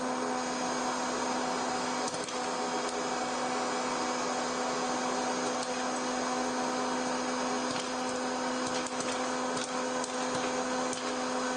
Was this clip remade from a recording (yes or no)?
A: no